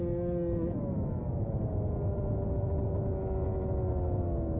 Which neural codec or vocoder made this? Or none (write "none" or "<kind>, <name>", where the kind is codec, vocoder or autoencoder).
none